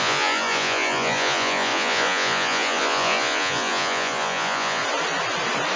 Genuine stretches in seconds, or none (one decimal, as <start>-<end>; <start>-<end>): 4.8-5.8